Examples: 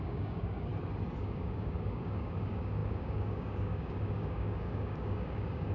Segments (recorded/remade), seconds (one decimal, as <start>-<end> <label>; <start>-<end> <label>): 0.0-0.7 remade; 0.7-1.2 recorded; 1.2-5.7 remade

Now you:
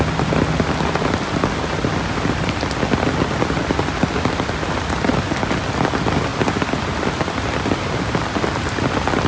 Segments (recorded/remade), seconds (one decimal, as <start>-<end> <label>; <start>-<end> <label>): 0.0-9.3 recorded

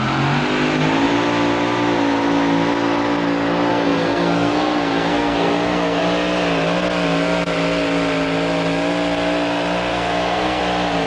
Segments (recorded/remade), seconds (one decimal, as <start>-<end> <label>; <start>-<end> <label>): 0.0-3.7 recorded; 3.7-6.0 remade; 6.0-9.9 recorded; 9.9-10.6 remade; 10.6-11.1 recorded

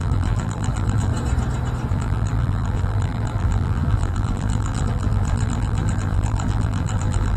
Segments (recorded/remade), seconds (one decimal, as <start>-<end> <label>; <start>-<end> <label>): 0.0-1.1 remade; 1.1-1.9 recorded; 1.9-7.4 remade

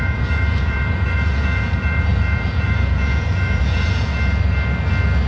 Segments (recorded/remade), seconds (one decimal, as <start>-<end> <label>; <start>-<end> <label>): 0.0-4.1 remade; 4.1-5.3 recorded

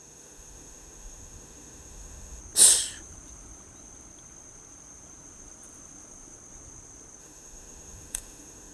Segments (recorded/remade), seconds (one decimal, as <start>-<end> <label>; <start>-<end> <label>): 0.0-2.4 remade; 2.4-7.2 recorded; 7.2-8.7 remade

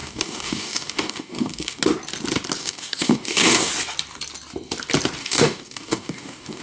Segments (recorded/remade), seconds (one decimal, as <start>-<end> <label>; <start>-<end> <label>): 0.0-1.8 remade; 1.8-2.6 recorded; 2.6-3.7 remade; 3.7-5.2 recorded; 5.2-6.6 remade